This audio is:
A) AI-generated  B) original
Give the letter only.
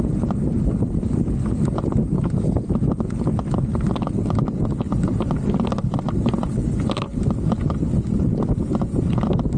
B